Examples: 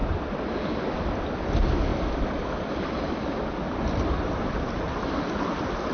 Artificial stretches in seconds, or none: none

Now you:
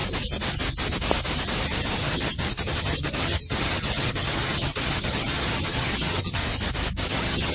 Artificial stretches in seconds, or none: 1.9-6.4 (vocoder, HiFi-GAN); 7.1-7.5

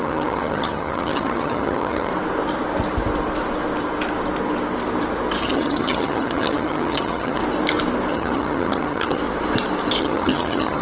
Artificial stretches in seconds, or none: 0.0-2.1 (vocoder, HiFi-GAN); 5.4-7.4; 8.1-9.2; 10.0-10.8

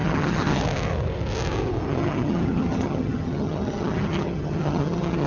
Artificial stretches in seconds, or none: 0.0-0.6 (vocoder, HiFi-GAN); 1.9-5.3

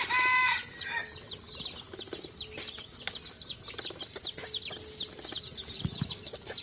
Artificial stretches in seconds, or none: none

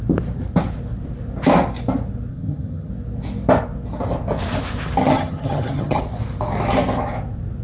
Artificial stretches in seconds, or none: 2.3-2.9 (vocoder, HiFi-GAN); 5.0-6.0